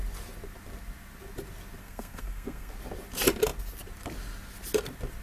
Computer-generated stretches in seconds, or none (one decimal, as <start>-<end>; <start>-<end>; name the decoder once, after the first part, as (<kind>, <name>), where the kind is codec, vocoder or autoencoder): 1.8-2.7 (codec, SNAC)